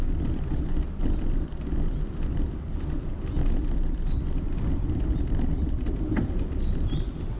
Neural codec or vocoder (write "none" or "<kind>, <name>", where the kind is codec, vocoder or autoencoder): none